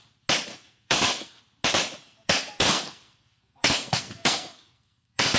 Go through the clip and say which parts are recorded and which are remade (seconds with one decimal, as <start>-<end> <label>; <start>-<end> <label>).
0.0-0.5 recorded; 0.5-1.4 remade; 1.4-2.0 recorded; 2.0-5.4 remade